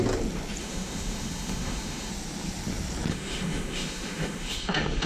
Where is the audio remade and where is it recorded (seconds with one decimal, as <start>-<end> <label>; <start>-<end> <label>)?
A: 0.0-0.6 recorded; 0.6-2.1 remade; 2.1-3.1 recorded; 3.1-5.1 remade